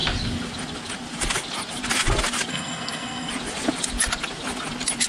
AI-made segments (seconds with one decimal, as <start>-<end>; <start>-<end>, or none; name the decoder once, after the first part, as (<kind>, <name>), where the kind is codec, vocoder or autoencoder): 2.5-3.3 (codec, SNAC)